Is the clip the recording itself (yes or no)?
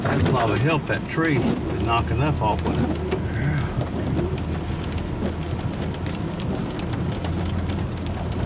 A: yes